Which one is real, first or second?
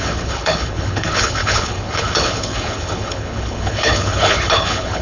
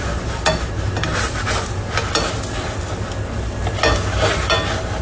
second